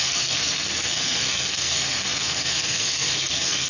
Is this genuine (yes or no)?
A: no